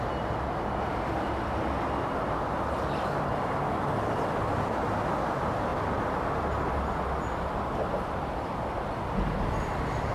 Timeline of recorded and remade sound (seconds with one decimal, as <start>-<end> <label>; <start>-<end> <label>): 0.0-10.1 recorded